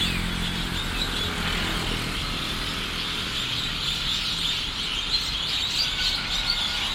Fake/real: real